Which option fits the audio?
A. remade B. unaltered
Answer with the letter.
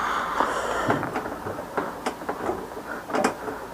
B